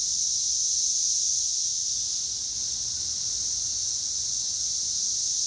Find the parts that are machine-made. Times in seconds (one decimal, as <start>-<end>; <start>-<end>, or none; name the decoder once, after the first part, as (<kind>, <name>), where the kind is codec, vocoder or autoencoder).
3.8-5.1 (vocoder, Vocos)